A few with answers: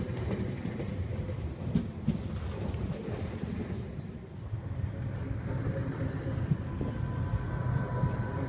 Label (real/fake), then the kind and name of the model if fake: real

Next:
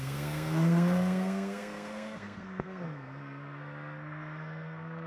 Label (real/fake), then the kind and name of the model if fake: fake, codec, SNAC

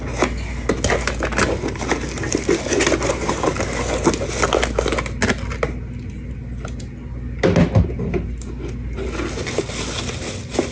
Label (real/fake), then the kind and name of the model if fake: real